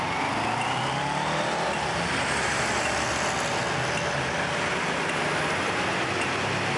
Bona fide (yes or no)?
yes